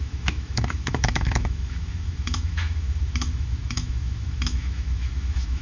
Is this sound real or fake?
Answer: fake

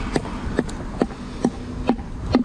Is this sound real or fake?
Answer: real